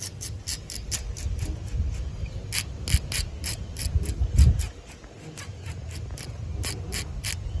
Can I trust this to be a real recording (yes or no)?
yes